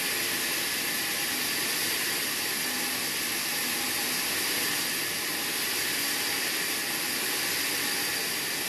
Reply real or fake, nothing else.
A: real